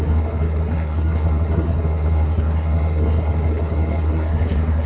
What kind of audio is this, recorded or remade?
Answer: remade